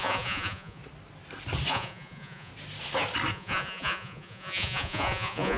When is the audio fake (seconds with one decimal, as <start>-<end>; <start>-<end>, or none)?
0.0-0.8; 1.7-2.5; 3.3-5.6